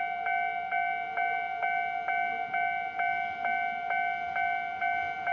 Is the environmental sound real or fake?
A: real